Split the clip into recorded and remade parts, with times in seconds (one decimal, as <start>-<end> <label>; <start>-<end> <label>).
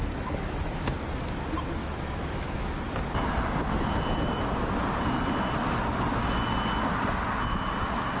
0.0-1.8 recorded; 1.8-2.8 remade; 2.8-8.2 recorded